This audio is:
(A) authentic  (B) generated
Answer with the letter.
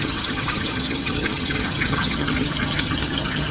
B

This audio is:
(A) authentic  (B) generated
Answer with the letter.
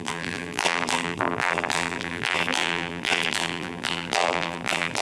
B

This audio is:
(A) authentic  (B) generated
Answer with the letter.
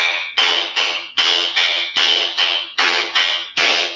B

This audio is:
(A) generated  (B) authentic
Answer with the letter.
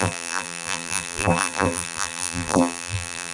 A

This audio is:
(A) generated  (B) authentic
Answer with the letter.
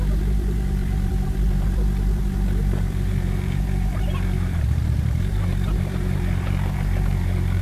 A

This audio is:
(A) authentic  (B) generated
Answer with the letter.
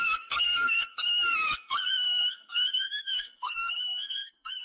B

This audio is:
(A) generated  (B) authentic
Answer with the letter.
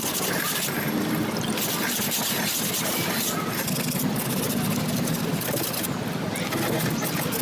B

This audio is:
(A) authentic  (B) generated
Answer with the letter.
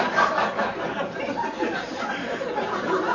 A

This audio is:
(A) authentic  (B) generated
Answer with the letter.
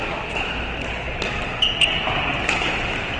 A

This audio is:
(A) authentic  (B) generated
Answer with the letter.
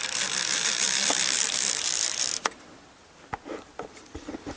B